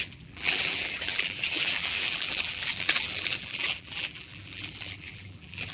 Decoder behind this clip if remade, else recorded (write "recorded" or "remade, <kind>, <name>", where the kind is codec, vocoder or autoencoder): remade, vocoder, BigVGAN v2